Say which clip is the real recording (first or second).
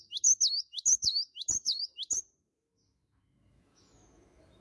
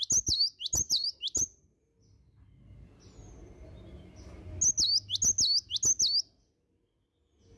second